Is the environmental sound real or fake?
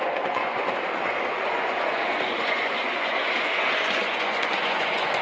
fake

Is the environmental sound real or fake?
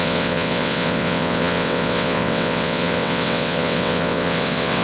fake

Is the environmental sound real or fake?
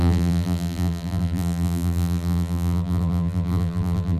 fake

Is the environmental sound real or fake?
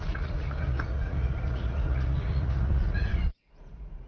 fake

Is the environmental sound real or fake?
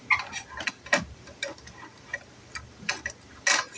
real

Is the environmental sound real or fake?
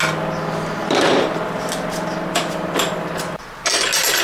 real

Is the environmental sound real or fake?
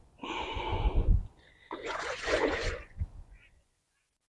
fake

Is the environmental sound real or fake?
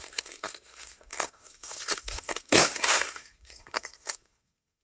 fake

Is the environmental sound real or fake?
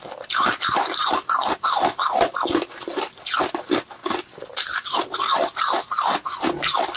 real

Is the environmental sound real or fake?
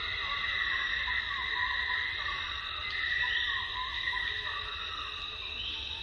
real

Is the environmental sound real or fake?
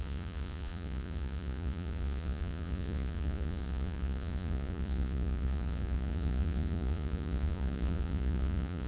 fake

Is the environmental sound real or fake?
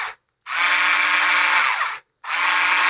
real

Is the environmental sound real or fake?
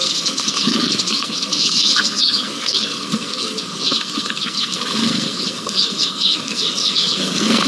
fake